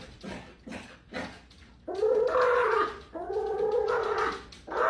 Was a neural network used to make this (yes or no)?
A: no